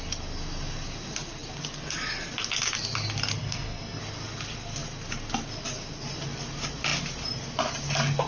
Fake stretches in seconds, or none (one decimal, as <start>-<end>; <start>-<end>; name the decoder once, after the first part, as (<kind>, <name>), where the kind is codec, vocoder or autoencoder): 3.4-4.0 (codec, SNAC)